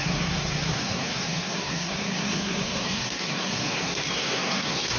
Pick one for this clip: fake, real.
fake